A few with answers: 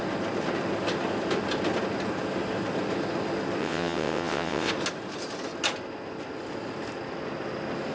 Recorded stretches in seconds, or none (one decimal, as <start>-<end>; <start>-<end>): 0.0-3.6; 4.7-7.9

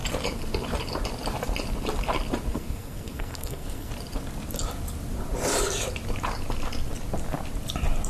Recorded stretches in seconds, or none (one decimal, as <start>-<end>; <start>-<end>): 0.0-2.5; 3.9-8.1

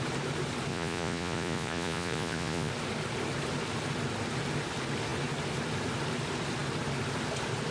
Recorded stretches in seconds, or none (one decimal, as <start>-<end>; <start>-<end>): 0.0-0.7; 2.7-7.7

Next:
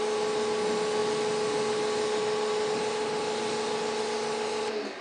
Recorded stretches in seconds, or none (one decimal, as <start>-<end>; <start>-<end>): 0.0-5.0

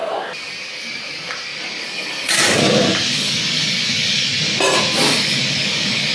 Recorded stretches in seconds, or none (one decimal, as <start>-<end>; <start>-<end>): 0.0-0.6; 4.3-5.1